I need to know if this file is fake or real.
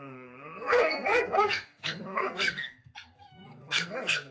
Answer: fake